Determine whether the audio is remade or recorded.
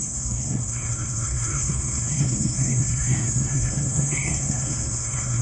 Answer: remade